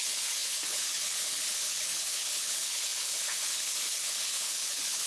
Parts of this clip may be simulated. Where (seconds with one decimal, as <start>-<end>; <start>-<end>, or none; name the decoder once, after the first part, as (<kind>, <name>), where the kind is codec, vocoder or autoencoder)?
0.0-5.1 (codec, HILCodec)